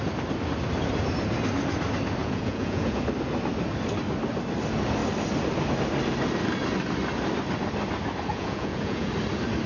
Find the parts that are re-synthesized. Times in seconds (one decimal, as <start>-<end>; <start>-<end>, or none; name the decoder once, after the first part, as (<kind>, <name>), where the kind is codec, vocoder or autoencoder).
2.2-3.0 (vocoder, Vocos); 8.3-9.1